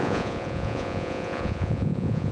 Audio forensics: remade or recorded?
remade